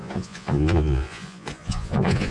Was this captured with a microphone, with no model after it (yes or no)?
no